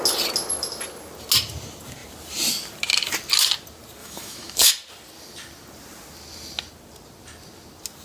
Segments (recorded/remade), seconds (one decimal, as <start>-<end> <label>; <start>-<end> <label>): 0.0-4.0 recorded; 4.0-4.7 remade; 4.7-8.0 recorded